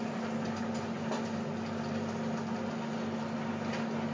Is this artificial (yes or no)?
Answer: no